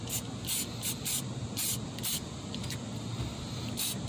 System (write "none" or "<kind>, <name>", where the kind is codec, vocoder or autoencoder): none